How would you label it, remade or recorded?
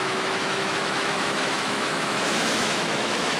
remade